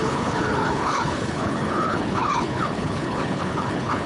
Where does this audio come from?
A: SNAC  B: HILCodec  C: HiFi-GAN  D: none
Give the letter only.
B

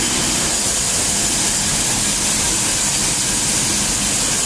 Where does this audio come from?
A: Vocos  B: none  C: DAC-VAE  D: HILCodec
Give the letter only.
B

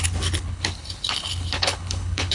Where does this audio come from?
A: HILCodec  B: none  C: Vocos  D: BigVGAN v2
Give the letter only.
A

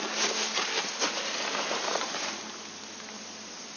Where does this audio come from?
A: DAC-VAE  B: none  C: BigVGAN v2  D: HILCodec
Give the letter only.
B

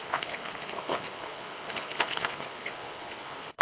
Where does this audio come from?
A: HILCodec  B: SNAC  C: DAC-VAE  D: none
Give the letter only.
A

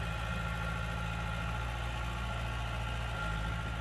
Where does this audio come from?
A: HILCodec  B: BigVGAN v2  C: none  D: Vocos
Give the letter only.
C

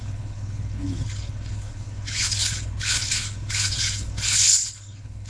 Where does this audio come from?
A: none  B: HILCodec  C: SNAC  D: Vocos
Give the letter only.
B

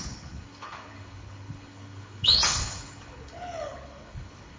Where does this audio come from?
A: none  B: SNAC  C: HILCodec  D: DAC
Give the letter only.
C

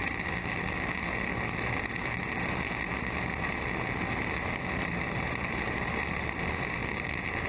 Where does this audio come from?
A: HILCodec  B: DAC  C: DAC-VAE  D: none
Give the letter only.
D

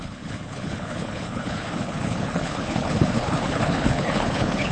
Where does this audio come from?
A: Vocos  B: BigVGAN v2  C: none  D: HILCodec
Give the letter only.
D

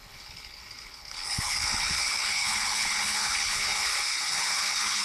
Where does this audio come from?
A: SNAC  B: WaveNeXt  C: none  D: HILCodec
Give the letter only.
D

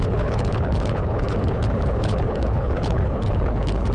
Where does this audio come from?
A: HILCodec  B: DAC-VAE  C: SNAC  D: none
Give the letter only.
A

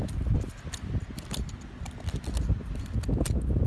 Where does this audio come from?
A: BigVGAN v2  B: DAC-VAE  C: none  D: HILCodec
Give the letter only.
C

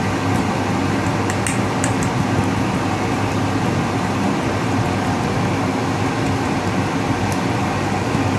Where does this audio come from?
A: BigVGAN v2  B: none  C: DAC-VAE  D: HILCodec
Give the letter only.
B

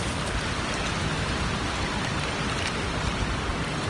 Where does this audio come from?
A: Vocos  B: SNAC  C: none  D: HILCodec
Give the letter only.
C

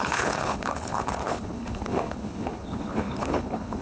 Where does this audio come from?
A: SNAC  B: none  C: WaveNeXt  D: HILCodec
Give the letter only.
D